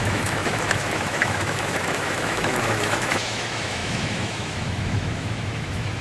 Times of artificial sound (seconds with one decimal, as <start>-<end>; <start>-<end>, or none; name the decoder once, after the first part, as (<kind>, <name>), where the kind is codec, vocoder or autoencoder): 0.0-6.0 (autoencoder, DAC-VAE)